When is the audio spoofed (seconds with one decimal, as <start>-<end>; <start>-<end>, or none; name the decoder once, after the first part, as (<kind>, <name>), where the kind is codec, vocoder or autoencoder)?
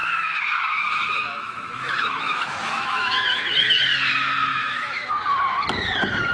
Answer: 0.0-3.8 (autoencoder, DAC-VAE); 4.5-5.1